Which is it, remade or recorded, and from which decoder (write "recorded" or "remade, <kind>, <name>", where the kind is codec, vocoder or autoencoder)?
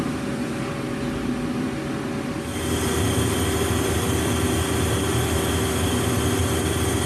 recorded